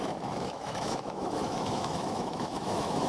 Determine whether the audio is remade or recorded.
remade